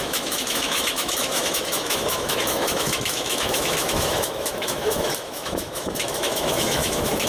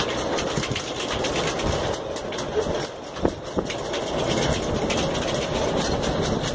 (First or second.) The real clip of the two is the second